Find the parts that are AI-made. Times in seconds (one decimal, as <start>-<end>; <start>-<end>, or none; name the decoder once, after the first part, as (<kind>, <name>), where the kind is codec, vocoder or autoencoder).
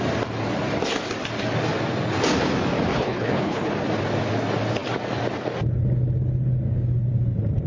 2.9-3.7 (codec, HILCodec)